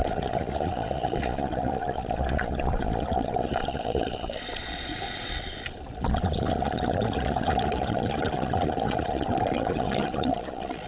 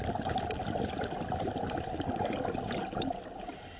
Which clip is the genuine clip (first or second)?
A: second